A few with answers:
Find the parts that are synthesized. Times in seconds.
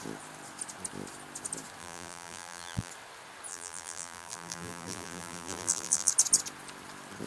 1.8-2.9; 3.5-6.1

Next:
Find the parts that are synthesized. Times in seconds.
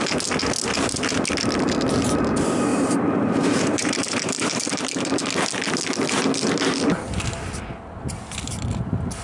2.7-5.2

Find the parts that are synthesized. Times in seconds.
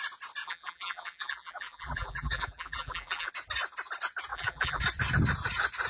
0.4-3.3; 4.3-4.8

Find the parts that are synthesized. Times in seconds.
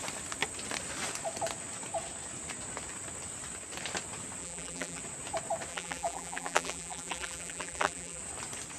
4.4-5.0; 5.7-8.2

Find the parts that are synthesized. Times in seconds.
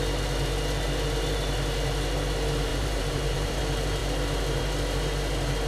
2.7-3.6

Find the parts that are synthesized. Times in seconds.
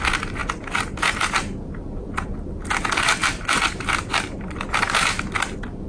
3.2-4.8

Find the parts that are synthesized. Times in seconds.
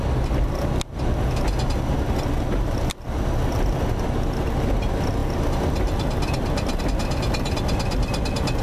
none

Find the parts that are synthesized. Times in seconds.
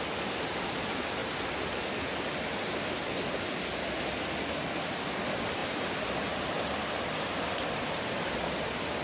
1.2-2.7; 5.6-8.5